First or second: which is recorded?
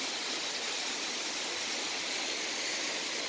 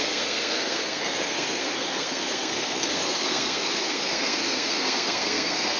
first